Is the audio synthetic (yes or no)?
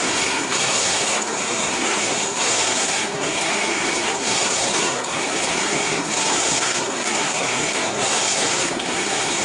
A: yes